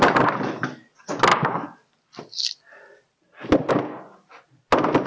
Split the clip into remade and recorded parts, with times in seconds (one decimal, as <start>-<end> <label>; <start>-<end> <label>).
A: 0.0-5.1 recorded